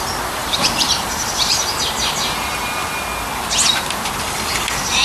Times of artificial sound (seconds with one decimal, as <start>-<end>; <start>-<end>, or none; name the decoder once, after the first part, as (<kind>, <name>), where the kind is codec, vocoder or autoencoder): 0.4-1.8 (vocoder, BigVGAN v2)